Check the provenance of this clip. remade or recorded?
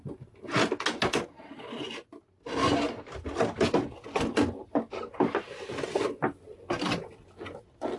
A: recorded